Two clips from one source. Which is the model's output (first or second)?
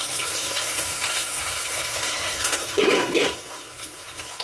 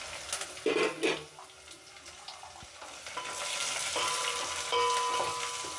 first